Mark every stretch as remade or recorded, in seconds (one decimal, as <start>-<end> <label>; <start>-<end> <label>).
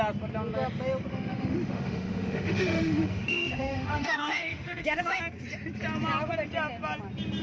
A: 0.0-1.1 recorded; 1.1-5.2 remade; 5.2-7.4 recorded